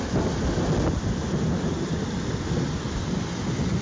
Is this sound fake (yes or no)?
no